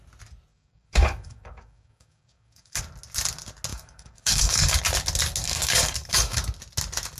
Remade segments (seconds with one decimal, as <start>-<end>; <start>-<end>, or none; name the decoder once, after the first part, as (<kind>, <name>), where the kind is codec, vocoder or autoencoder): 0.5-2.8 (codec, DAC); 3.7-4.8; 5.4-6.4